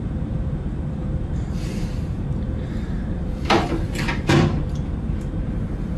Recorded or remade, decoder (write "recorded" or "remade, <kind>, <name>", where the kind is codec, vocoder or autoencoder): remade, vocoder, BigVGAN v2